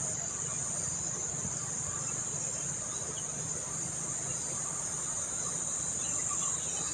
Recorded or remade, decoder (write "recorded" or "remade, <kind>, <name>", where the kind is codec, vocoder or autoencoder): recorded